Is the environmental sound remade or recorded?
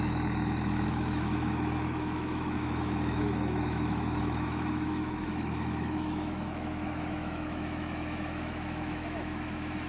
remade